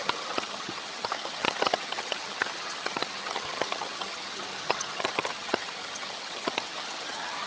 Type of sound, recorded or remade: remade